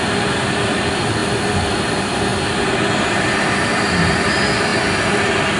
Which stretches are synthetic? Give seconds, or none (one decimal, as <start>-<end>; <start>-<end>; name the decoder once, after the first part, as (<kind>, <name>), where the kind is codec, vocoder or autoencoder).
none